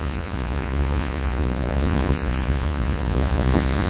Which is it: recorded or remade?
remade